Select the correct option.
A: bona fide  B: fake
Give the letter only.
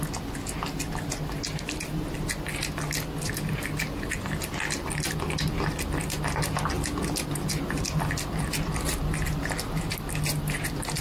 A